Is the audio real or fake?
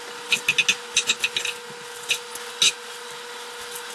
real